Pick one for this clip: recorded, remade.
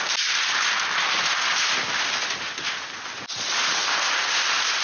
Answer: recorded